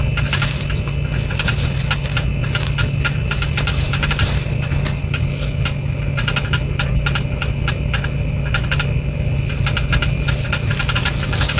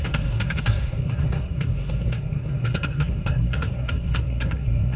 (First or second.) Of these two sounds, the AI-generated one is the second